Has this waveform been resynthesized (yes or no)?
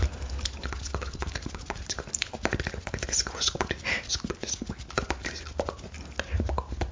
no